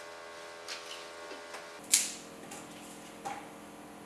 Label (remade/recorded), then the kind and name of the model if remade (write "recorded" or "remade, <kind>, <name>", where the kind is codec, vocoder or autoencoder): recorded